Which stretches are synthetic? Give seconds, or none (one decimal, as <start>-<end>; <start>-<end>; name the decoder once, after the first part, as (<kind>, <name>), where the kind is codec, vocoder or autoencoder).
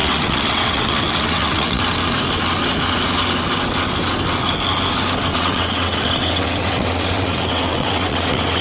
0.0-1.8 (vocoder, WaveNeXt); 5.3-8.6